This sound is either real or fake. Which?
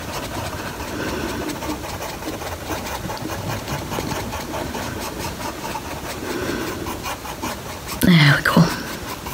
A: real